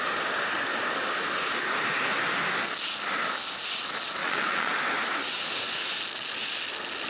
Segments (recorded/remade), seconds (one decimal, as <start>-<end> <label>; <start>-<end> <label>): 0.0-4.2 recorded; 4.2-4.7 remade; 4.7-7.1 recorded